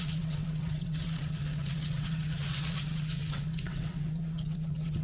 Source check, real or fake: fake